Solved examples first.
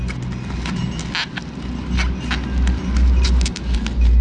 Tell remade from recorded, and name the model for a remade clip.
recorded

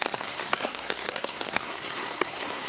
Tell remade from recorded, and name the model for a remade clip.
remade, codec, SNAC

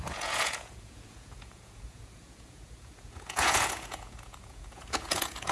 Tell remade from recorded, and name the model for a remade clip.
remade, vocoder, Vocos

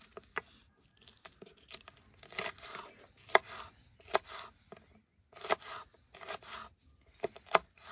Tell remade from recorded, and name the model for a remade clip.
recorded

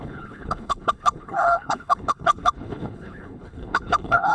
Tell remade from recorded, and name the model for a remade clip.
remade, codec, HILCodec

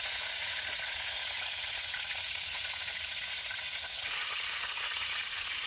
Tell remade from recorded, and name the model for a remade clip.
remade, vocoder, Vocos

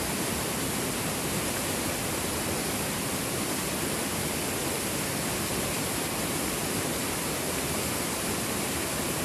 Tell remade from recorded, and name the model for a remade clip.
remade, vocoder, BigVGAN v2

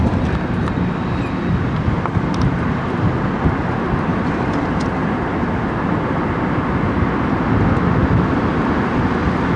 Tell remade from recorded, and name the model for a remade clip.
recorded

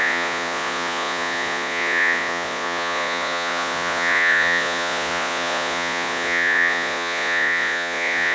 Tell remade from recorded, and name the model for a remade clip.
remade, vocoder, Vocos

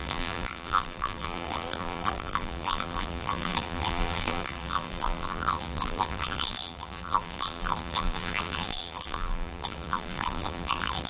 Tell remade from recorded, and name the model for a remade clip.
remade, vocoder, BigVGAN v2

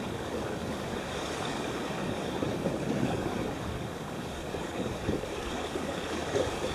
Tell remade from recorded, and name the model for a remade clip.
remade, codec, DAC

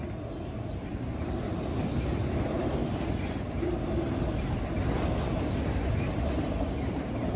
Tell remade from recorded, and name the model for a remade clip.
recorded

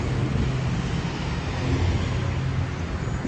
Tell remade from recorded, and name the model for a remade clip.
recorded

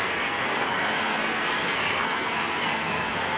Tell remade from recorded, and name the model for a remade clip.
remade, codec, SNAC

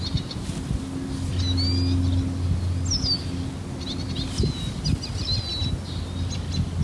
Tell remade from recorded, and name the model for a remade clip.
recorded